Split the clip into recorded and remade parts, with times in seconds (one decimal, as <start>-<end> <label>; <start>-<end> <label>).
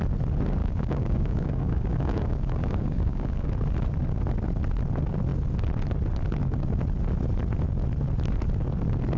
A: 0.0-0.6 recorded; 0.6-3.5 remade; 3.5-9.2 recorded